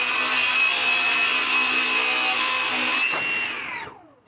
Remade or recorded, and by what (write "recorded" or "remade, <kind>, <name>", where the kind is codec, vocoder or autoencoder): recorded